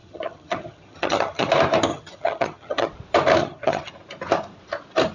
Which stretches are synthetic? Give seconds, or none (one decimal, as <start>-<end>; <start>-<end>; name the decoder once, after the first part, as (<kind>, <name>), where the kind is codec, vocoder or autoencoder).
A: 0.0-1.5 (vocoder, HiFi-GAN); 1.9-2.9; 3.4-3.9